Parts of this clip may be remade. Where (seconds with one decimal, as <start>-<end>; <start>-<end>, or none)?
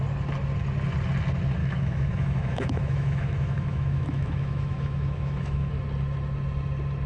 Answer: 1.6-5.7